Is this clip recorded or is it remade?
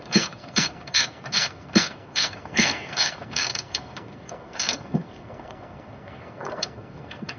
remade